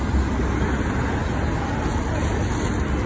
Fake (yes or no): no